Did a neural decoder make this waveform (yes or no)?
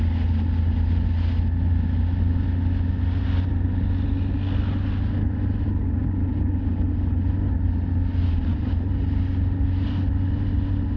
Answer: no